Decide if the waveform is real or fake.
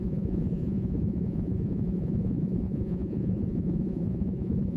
fake